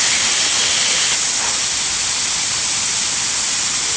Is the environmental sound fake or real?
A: real